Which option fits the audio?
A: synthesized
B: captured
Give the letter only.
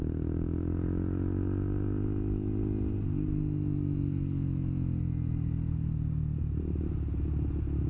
B